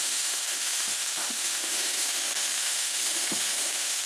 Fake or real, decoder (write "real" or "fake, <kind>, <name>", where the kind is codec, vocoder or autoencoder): fake, autoencoder, DAC-VAE